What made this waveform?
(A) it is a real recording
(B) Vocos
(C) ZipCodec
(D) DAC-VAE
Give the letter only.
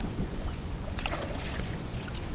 B